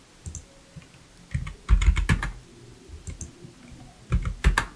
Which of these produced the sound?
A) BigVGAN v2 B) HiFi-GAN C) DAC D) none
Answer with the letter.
D